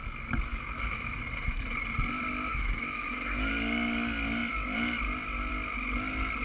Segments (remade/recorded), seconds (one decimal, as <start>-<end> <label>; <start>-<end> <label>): 0.0-0.5 recorded; 0.5-1.2 remade; 1.2-2.5 recorded; 2.5-3.5 remade; 3.5-6.4 recorded